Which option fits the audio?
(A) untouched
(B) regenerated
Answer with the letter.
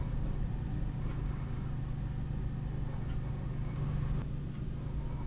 A